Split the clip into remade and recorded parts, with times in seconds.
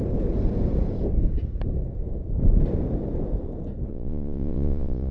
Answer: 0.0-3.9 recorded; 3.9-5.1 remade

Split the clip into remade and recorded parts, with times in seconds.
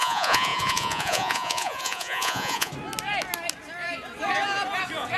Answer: 0.0-2.7 remade; 2.7-5.2 recorded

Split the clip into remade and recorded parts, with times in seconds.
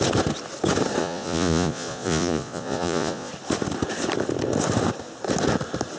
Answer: 0.0-1.0 recorded; 1.0-3.3 remade; 3.3-6.0 recorded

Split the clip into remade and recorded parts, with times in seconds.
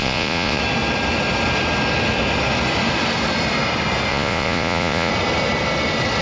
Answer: 0.0-0.6 remade; 0.6-4.1 recorded; 4.1-5.1 remade; 5.1-6.2 recorded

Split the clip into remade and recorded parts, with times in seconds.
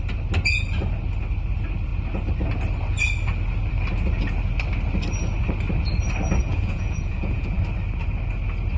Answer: 0.0-6.4 recorded; 6.4-7.6 remade; 7.6-8.8 recorded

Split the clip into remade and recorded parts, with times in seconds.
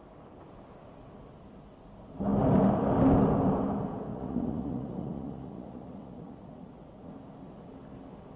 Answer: 0.0-4.1 recorded; 4.1-7.1 remade; 7.1-8.4 recorded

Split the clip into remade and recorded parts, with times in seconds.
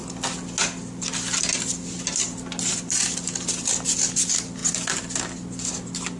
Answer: 0.0-6.2 recorded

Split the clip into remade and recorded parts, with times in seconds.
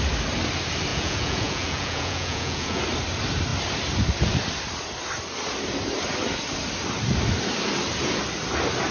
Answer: 0.0-0.9 recorded; 0.9-2.8 remade; 2.8-8.9 recorded